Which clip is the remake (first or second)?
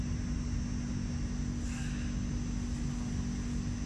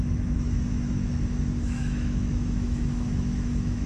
second